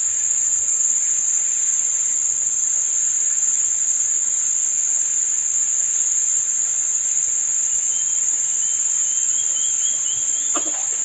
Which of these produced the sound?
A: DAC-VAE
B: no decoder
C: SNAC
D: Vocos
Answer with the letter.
B